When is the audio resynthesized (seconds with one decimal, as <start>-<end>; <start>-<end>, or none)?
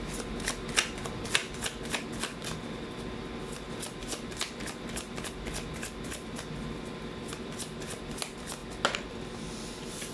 none